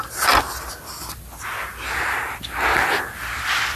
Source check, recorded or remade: recorded